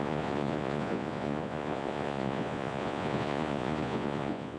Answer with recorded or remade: remade